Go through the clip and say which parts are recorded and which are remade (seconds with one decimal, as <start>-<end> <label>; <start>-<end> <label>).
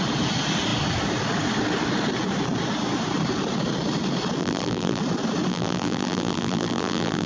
0.0-4.4 recorded; 4.4-5.0 remade; 5.0-5.5 recorded; 5.5-7.3 remade